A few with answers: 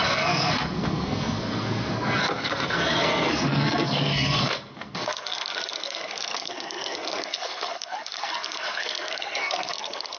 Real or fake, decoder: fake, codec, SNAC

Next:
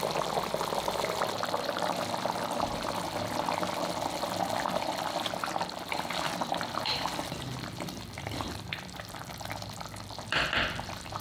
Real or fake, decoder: fake, vocoder, BigVGAN v2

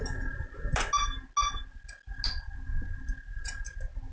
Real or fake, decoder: real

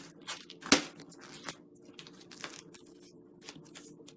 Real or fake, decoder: real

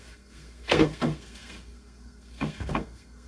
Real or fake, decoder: fake, codec, SNAC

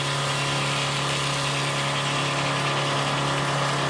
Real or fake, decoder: real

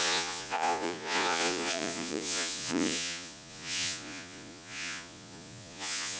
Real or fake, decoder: fake, vocoder, Vocos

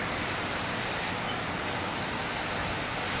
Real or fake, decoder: real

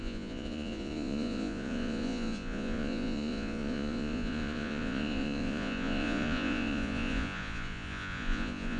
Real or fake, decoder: fake, vocoder, Vocos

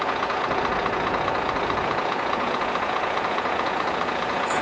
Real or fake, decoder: fake, vocoder, Vocos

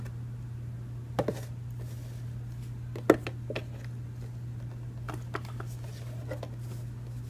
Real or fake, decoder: real